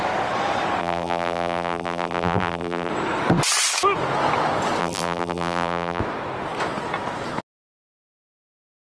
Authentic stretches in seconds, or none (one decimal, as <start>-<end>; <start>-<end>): 0.0-0.8; 2.9-4.8; 6.0-8.8